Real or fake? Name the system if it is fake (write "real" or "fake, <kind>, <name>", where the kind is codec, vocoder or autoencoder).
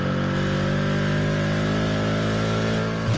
real